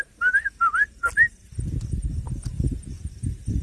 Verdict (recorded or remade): recorded